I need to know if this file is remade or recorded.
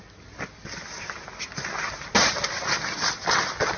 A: recorded